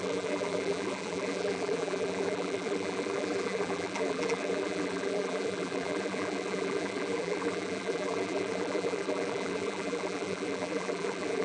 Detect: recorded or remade remade